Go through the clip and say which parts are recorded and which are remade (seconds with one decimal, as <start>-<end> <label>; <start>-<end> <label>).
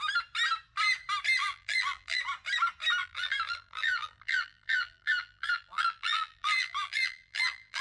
0.0-1.4 recorded; 1.4-2.2 remade; 2.2-3.0 recorded; 3.0-7.8 remade